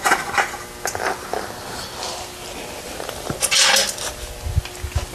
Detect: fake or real real